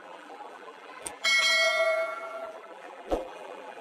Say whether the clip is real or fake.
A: fake